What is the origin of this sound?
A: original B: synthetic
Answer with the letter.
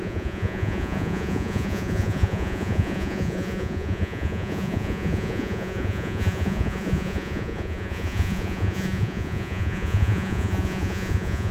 B